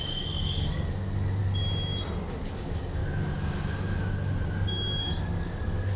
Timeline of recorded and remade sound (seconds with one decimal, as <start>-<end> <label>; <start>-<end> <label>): 0.0-1.4 remade; 1.4-2.4 recorded; 2.4-3.0 remade; 3.0-5.0 recorded; 5.0-6.0 remade